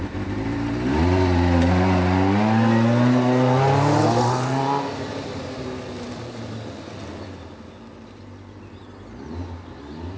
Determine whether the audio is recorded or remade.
recorded